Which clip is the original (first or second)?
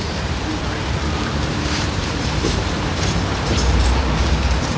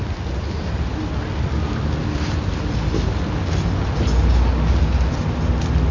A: second